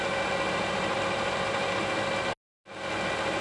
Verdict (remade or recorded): recorded